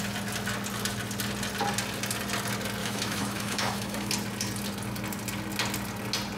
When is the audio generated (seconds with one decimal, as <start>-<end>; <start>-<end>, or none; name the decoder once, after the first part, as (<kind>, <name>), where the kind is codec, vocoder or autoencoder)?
2.8-4.1 (autoencoder, DAC-VAE)